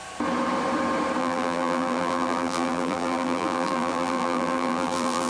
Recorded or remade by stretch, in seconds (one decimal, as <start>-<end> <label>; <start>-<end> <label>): 0.0-1.2 recorded; 1.2-5.3 remade